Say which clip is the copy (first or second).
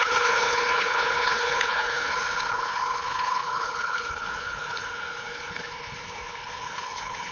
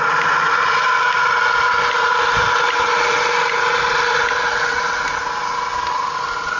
first